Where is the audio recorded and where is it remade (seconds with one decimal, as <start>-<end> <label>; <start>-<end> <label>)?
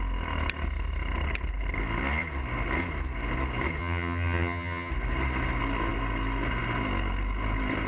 0.0-3.8 recorded; 3.8-4.9 remade; 4.9-7.9 recorded